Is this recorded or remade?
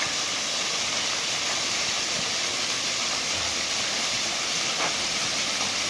recorded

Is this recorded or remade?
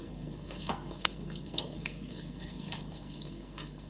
remade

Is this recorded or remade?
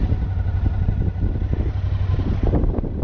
recorded